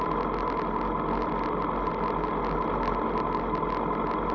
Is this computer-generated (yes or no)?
no